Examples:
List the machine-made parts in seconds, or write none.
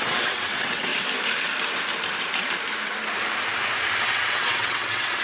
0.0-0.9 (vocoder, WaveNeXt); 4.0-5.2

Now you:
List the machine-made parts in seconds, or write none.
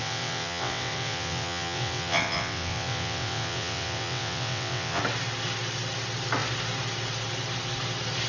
0.0-5.0 (vocoder, WaveNeXt)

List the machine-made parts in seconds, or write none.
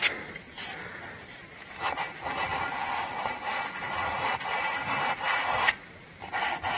none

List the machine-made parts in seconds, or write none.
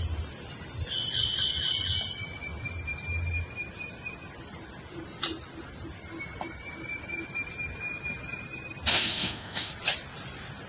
8.9-9.7 (autoencoder, DAC-VAE)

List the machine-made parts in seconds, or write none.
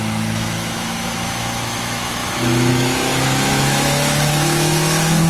0.0-5.3 (autoencoder, DAC-VAE)